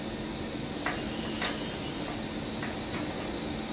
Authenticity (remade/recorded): recorded